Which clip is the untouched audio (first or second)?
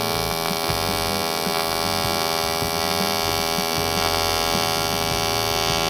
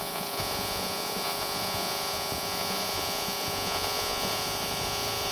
first